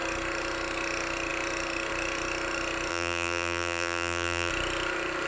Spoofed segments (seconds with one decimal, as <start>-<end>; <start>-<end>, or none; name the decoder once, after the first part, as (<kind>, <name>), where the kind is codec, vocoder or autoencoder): 2.9-4.5 (vocoder, BigVGAN v2)